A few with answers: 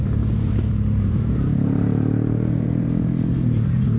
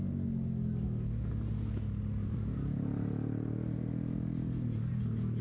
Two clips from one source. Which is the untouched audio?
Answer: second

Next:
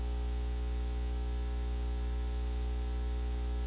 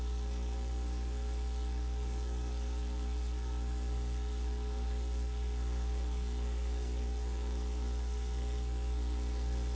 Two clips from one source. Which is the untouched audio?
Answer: first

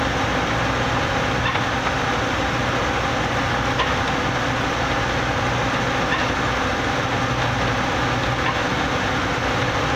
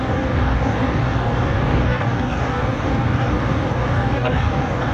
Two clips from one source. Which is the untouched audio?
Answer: first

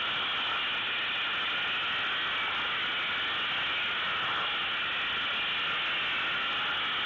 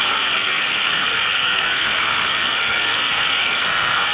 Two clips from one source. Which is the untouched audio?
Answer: first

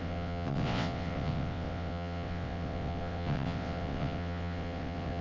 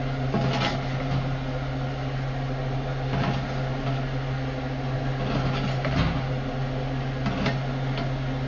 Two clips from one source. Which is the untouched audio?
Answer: second